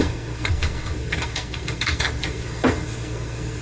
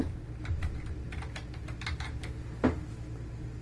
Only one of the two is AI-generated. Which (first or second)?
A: first